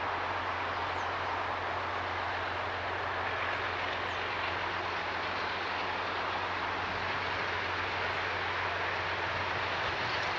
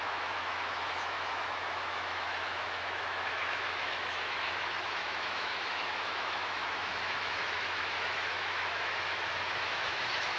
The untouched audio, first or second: first